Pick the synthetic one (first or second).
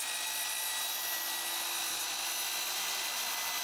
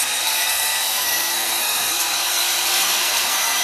second